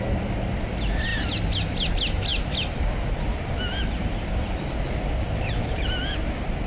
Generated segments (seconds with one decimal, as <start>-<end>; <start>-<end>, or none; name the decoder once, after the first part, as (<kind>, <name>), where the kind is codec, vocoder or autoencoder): 2.3-6.3 (vocoder, BigVGAN v2)